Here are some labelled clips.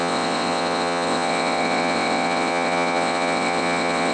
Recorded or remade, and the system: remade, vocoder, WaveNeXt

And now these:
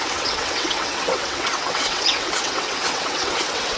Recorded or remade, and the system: remade, vocoder, WaveNeXt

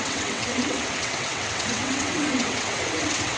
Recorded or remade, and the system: remade, vocoder, WaveNeXt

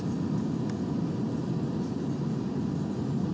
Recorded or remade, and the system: recorded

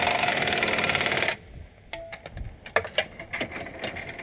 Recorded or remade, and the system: recorded